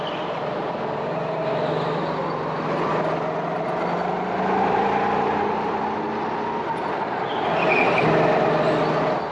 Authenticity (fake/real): real